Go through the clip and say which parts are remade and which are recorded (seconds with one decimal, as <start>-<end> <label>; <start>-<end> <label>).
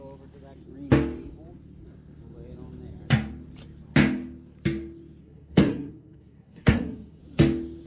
0.0-5.2 recorded; 5.2-7.2 remade; 7.2-7.9 recorded